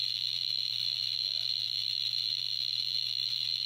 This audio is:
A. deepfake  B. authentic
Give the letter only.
A